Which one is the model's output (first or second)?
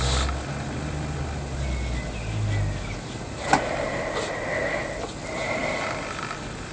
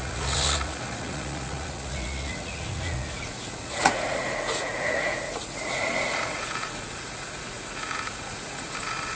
second